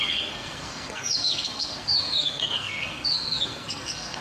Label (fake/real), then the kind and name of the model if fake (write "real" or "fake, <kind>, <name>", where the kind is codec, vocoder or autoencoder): fake, codec, SNAC